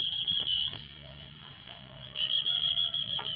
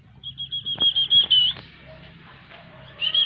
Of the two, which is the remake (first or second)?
first